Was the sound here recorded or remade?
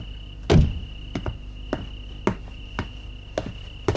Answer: recorded